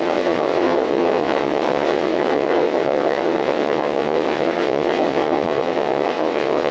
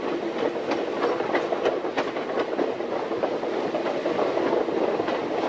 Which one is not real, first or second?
first